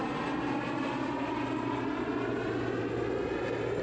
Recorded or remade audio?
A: recorded